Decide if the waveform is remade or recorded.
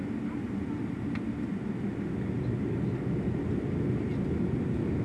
recorded